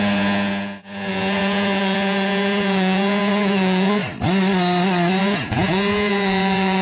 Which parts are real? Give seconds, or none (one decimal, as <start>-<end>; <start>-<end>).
4.0-5.2